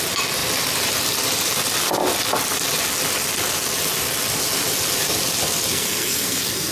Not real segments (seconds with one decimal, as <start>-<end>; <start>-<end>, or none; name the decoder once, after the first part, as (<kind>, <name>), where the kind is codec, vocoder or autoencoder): 5.7-6.7 (codec, SNAC)